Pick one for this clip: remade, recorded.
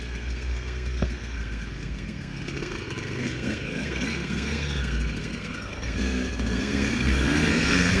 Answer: remade